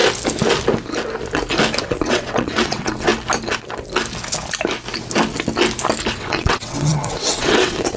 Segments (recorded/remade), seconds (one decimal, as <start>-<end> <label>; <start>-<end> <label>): 0.0-1.8 recorded; 1.8-3.1 remade; 3.1-6.1 recorded; 6.1-8.0 remade